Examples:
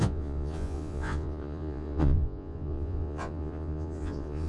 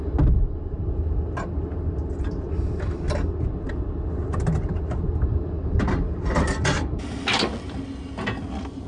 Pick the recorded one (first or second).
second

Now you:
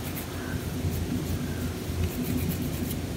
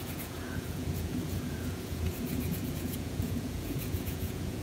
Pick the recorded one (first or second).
first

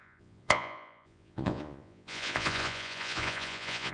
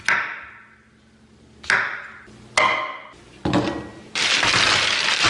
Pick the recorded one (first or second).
second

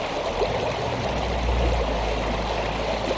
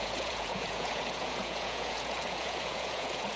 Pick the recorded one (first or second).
first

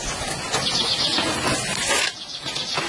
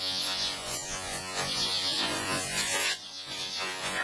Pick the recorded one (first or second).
first